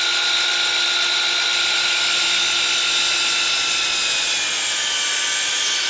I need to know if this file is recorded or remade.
recorded